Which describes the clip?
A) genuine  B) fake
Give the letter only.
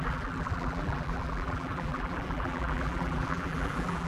B